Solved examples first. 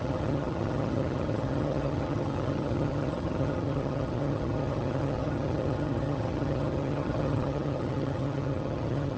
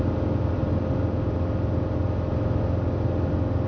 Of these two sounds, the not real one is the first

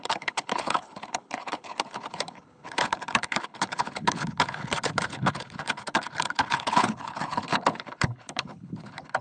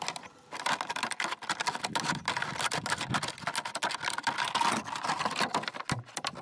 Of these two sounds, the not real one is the first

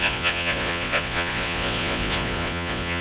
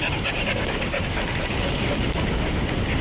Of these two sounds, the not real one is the first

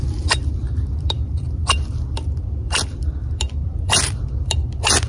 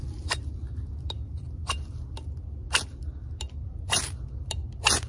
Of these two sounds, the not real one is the first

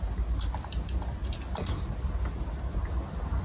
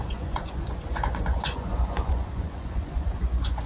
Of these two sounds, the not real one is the second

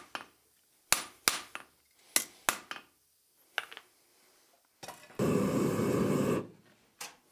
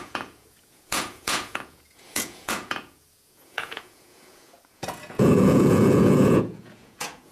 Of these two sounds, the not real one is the second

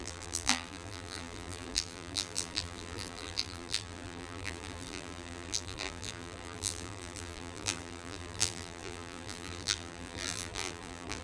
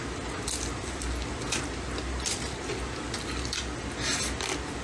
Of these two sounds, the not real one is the first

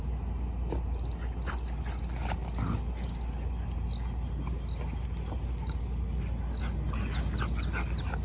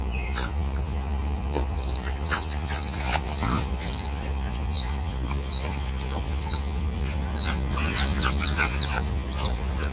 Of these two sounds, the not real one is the second